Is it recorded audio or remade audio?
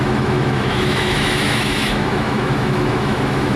remade